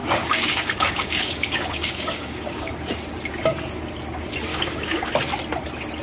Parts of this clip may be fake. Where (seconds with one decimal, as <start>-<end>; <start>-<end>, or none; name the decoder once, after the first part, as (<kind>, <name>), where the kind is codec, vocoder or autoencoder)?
0.0-2.7 (codec, DAC); 4.5-5.1